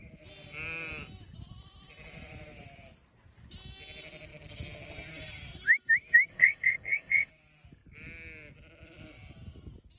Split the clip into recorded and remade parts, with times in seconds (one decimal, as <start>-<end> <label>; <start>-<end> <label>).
0.0-6.3 recorded; 6.3-7.3 remade; 7.3-10.0 recorded